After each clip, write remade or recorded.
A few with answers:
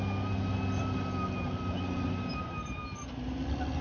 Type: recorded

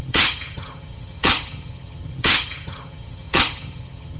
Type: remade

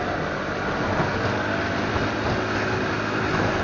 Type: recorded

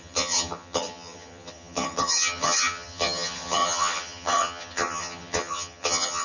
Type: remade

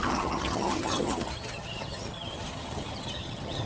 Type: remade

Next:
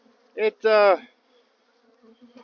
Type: recorded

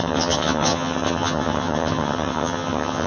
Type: remade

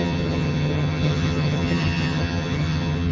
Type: remade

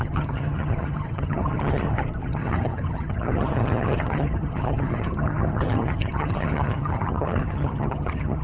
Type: remade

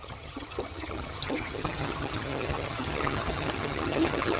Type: remade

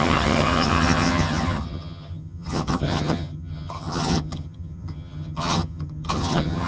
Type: remade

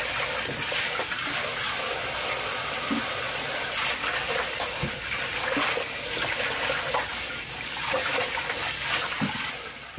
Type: recorded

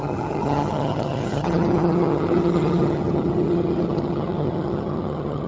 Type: remade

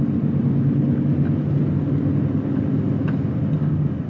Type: recorded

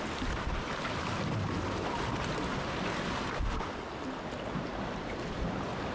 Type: recorded